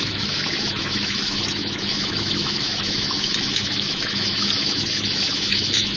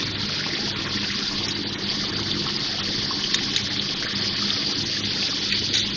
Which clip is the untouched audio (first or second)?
second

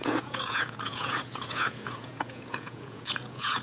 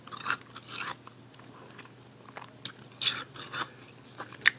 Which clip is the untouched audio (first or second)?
second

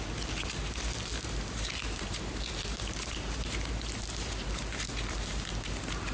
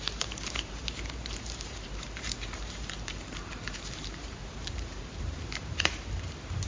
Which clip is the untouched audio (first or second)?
first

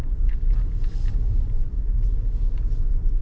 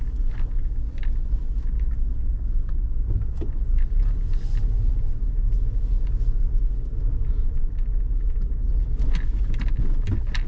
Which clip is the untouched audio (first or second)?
second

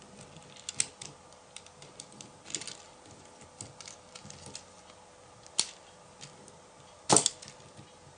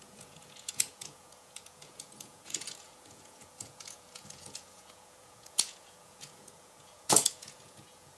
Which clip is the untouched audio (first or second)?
first